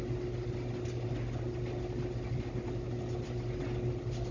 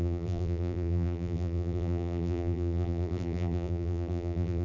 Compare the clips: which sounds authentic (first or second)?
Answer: first